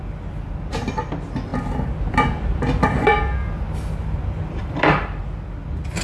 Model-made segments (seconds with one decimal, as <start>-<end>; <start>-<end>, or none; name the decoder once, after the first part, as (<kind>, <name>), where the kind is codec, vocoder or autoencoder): 4.6-5.2 (vocoder, BigVGAN v2)